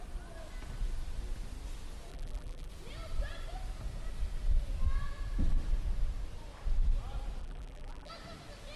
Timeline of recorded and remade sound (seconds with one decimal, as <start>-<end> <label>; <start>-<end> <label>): 0.0-2.1 recorded; 2.1-2.7 remade; 2.7-7.4 recorded; 7.4-8.1 remade; 8.1-8.8 recorded